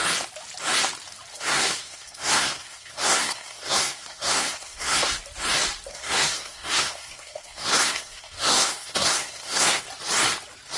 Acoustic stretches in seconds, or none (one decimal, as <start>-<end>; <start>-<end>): 0.0-1.3; 5.2-5.9; 9.8-10.8